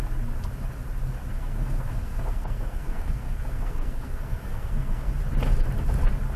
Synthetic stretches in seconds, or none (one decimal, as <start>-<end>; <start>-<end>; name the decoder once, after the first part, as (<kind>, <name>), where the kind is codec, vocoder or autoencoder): 1.3-5.1 (codec, SNAC)